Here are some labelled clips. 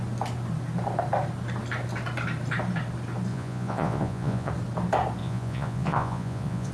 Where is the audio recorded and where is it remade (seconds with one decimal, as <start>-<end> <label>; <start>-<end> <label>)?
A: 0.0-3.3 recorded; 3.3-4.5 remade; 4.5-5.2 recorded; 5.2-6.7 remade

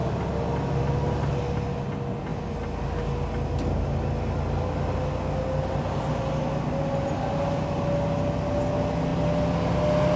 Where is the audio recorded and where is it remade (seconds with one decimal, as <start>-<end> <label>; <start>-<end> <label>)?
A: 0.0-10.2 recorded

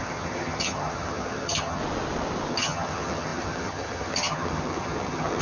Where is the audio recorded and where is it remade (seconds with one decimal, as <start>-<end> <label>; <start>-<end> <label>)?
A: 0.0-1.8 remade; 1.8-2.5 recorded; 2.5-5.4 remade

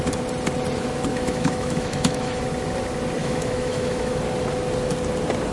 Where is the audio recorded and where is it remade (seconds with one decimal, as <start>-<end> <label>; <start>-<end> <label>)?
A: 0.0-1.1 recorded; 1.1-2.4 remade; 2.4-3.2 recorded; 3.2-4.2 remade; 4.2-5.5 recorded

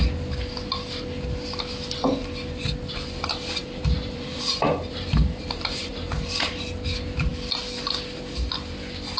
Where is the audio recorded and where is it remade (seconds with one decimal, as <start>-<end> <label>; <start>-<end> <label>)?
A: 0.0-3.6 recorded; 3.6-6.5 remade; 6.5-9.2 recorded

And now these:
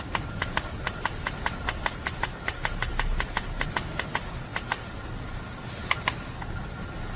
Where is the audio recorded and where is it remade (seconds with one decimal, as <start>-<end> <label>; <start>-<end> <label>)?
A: 0.0-7.2 recorded